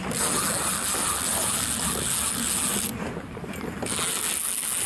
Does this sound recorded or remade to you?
recorded